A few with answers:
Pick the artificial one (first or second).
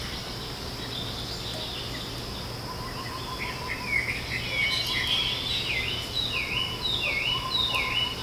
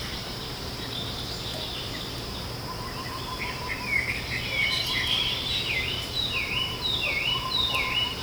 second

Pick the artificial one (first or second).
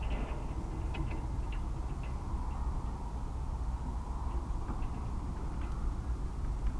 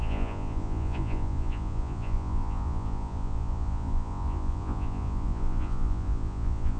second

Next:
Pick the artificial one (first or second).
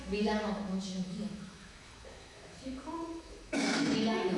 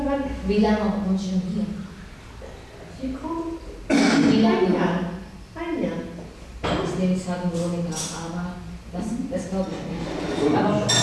first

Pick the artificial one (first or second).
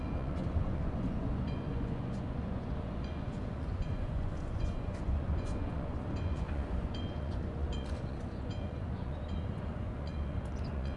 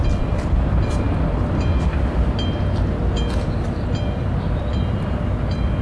first